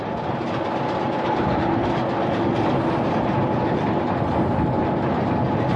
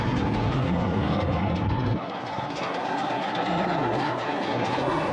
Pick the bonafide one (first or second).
first